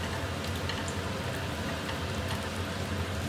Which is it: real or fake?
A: real